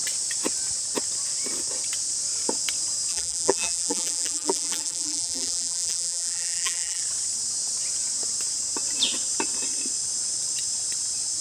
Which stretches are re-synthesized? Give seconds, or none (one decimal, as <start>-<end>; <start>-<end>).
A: 3.1-7.0